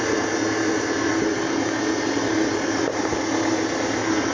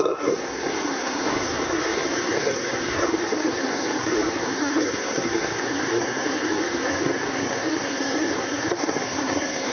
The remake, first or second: second